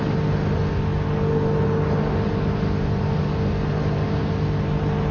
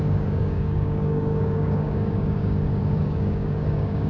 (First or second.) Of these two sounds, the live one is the first